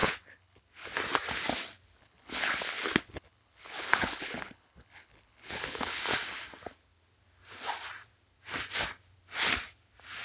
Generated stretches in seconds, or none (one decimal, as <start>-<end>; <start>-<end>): 0.0-0.6; 2.0-6.0